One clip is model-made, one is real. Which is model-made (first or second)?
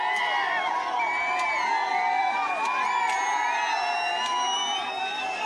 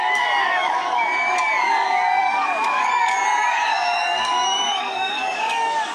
second